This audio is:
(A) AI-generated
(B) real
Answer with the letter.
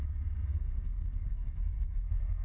A